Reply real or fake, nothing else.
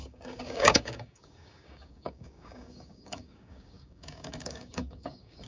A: fake